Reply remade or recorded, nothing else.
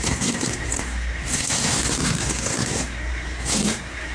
remade